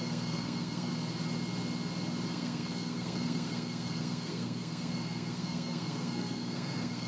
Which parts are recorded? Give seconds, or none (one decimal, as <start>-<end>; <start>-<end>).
0.9-2.3